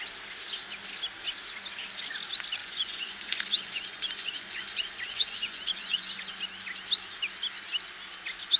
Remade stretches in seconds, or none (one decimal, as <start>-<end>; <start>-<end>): 2.6-6.3